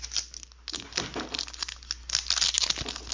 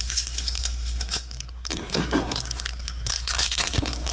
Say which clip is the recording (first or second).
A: first